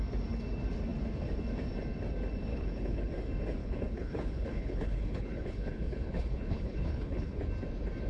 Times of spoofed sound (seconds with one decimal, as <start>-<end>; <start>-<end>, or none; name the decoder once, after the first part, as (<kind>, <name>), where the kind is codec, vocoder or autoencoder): 2.5-3.1 (codec, HILCodec); 3.6-7.4